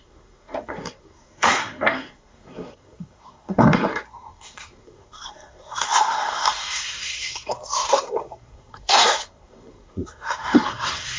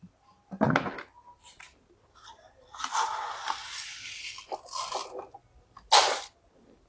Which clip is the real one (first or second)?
second